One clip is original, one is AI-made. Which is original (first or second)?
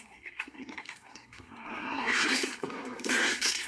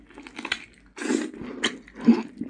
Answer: second